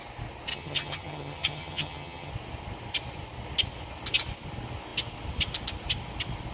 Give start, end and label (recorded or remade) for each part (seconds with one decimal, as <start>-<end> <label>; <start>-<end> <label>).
0.0-0.5 recorded; 0.5-2.3 remade; 2.3-6.5 recorded